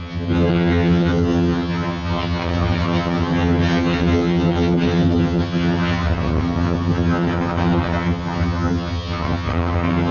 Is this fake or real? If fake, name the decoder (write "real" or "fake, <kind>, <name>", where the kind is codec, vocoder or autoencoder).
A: fake, vocoder, HiFi-GAN